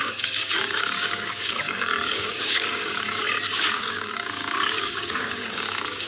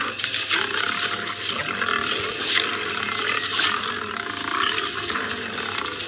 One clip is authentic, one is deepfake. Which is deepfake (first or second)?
first